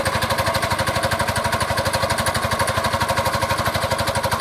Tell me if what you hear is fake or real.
real